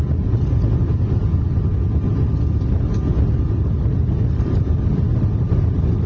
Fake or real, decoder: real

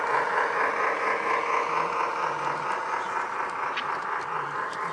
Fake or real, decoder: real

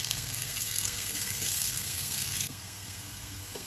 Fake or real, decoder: fake, codec, SNAC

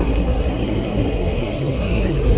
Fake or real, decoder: fake, codec, SNAC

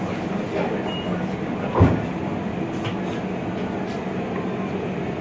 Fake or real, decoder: real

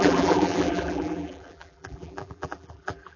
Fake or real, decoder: fake, vocoder, BigVGAN v2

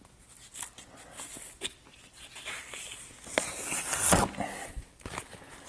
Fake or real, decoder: real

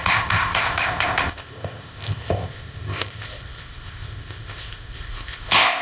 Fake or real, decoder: fake, codec, ZipCodec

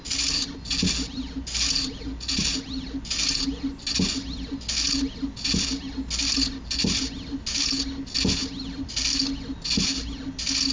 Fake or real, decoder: real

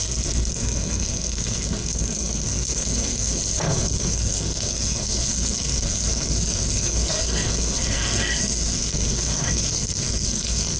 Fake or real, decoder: fake, codec, SNAC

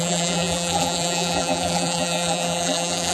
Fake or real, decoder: fake, vocoder, BigVGAN v2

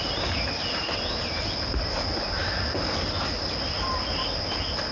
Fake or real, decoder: real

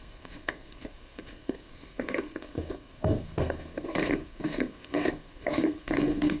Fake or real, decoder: fake, codec, SNAC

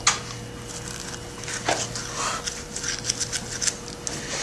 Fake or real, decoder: real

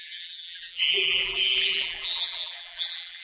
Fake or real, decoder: fake, vocoder, BigVGAN v2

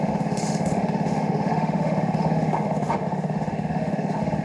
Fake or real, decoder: fake, autoencoder, DAC-VAE